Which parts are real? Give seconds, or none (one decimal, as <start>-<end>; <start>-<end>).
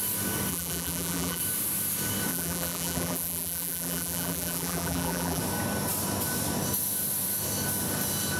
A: 0.0-0.5; 1.4-2.3; 5.4-8.4